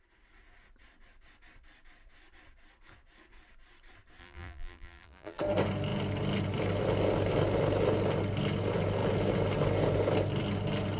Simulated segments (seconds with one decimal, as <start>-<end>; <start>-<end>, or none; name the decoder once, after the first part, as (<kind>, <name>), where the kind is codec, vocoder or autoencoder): 4.2-5.4 (vocoder, BigVGAN v2)